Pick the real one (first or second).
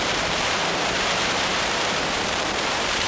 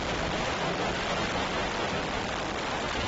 second